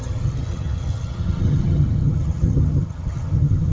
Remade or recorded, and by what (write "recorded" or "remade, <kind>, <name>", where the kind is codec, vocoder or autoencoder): remade, vocoder, HiFi-GAN